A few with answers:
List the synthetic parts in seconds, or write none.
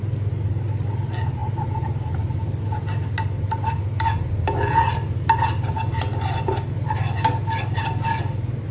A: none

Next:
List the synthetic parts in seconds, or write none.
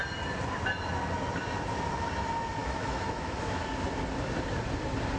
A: 2.6-3.6 (autoencoder, DAC-VAE)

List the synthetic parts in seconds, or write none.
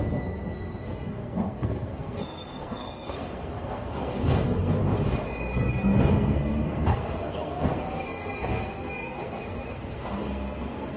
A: 0.0-4.8 (codec, SNAC); 5.6-11.0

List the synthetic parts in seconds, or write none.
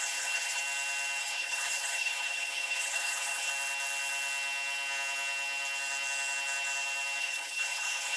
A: 0.0-0.6 (codec, HILCodec); 1.2-3.5; 7.2-8.2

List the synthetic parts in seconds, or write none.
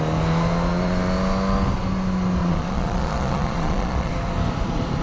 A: 2.4-4.1 (vocoder, Vocos)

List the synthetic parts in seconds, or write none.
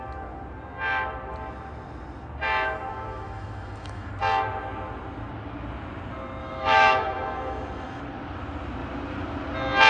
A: 2.9-4.1 (autoencoder, DAC-VAE); 6.4-8.0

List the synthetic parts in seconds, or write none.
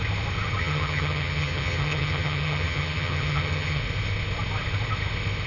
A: 0.6-3.8 (vocoder, HiFi-GAN)